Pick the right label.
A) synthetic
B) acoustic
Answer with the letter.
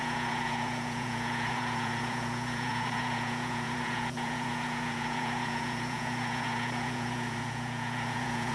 A